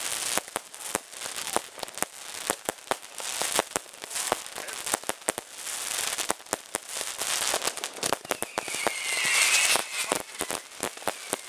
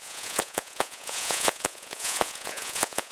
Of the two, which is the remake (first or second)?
second